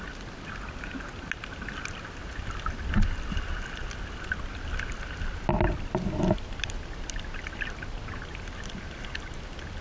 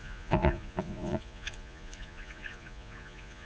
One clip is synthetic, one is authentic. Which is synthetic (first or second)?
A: second